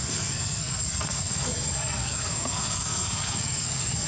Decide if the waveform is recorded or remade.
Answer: remade